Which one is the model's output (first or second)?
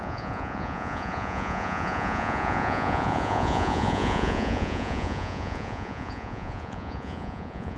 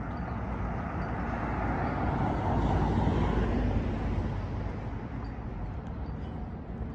first